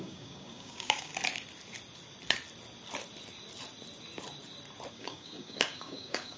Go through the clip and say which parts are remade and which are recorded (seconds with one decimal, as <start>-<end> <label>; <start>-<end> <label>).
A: 0.0-1.1 remade; 1.1-4.9 recorded; 4.9-6.4 remade